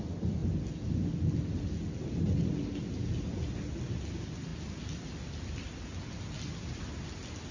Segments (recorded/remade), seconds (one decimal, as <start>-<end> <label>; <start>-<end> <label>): 0.0-7.5 recorded